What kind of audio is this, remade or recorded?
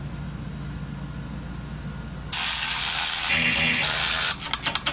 recorded